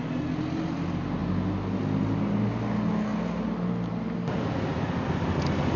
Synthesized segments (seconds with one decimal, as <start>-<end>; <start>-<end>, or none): none